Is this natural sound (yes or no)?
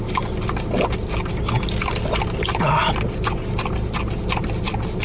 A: yes